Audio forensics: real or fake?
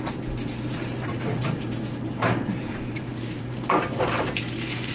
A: fake